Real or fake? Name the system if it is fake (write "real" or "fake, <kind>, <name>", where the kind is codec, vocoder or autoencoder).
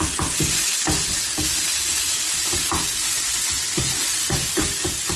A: real